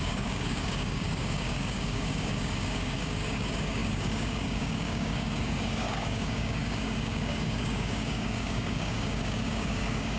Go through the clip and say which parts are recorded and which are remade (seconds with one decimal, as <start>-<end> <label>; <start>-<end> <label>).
0.0-10.2 remade